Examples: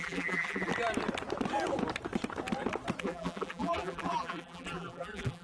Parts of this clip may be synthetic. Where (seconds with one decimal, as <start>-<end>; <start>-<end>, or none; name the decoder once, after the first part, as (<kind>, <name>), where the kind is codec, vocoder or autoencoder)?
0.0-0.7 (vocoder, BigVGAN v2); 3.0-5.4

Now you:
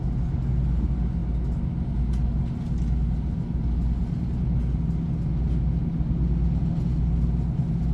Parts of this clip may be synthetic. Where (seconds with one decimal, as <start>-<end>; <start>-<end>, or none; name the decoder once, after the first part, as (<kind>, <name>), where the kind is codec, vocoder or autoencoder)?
none

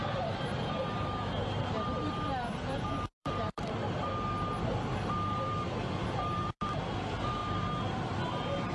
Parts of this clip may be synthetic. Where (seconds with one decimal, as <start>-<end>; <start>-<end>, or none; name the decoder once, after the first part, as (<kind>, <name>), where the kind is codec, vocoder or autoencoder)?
0.0-4.1 (vocoder, BigVGAN v2); 6.0-6.6

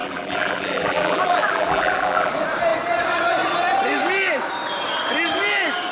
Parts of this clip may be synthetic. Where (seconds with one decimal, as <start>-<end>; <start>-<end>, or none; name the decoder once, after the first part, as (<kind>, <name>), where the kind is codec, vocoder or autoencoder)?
0.0-2.3 (vocoder, BigVGAN v2)

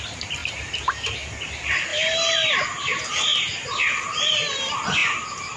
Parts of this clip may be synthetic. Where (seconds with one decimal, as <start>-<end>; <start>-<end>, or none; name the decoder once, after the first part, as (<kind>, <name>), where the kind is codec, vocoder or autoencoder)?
1.9-2.5 (vocoder, BigVGAN v2); 5.0-5.6

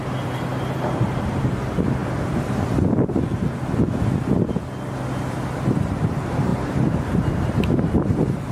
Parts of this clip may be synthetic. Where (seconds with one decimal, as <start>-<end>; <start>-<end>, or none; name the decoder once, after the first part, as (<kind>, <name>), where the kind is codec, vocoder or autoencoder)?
0.0-2.0 (vocoder, BigVGAN v2); 5.3-8.5

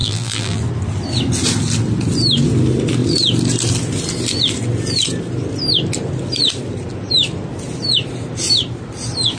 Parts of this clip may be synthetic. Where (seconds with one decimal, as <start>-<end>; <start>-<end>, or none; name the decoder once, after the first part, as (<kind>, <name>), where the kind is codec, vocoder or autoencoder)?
0.0-0.6 (vocoder, BigVGAN v2)